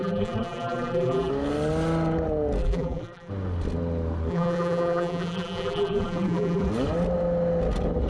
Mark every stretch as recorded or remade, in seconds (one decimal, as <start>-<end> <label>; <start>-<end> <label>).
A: 0.0-1.3 remade; 1.3-2.6 recorded; 2.6-3.3 remade; 3.3-4.3 recorded; 4.3-6.7 remade; 6.7-8.1 recorded